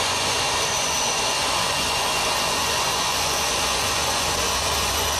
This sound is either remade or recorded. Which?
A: remade